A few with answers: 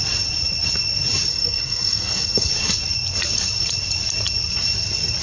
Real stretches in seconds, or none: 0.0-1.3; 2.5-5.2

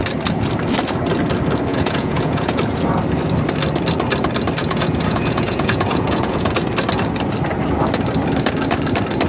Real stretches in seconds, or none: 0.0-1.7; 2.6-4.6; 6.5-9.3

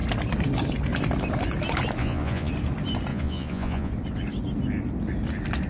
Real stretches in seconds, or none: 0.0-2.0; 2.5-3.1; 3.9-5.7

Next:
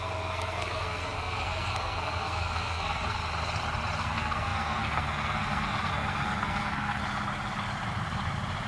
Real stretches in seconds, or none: 3.2-4.0; 7.0-8.7